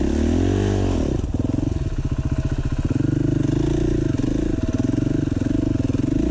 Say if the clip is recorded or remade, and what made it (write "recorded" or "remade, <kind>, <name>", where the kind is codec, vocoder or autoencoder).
recorded